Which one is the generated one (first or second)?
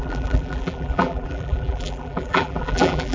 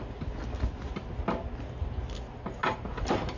first